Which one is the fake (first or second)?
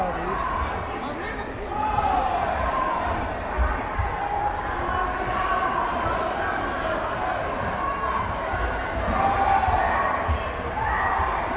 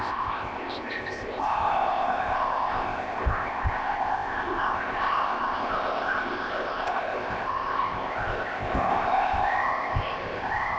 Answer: second